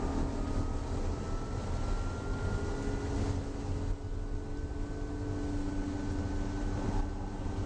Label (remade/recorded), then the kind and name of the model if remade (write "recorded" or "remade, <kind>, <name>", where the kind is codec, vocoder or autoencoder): recorded